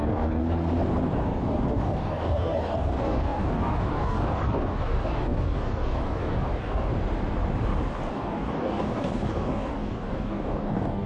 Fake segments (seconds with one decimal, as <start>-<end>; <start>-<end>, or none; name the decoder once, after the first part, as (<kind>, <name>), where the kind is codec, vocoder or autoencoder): 0.0-0.4 (codec, DAC); 1.2-6.9; 8.1-11.1

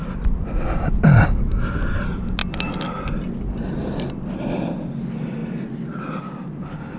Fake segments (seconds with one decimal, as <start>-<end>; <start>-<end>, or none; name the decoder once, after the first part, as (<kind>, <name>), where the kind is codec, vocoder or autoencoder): none